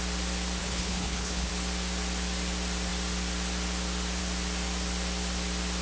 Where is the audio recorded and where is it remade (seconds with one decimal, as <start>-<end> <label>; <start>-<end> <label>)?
0.0-0.6 recorded; 0.6-1.5 remade; 1.5-5.8 recorded